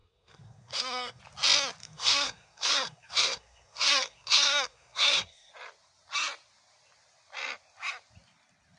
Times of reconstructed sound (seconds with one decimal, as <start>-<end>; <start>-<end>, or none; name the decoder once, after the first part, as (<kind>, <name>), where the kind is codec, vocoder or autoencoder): 0.0-1.2 (codec, SNAC); 1.8-5.5